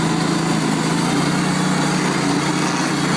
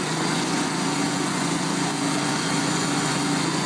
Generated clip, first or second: second